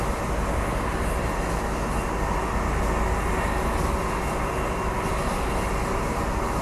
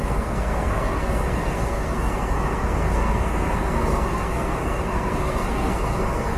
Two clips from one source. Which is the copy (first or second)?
second